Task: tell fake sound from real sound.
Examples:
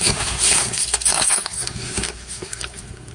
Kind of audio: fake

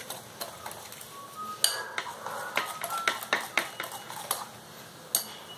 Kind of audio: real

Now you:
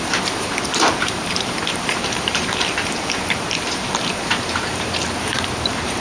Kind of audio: fake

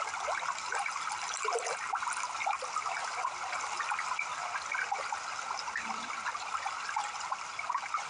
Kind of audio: real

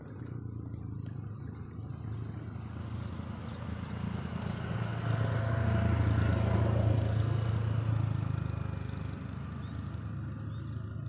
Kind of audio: real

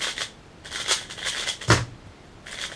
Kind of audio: real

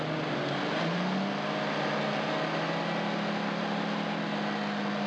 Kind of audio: real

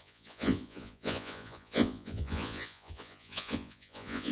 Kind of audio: fake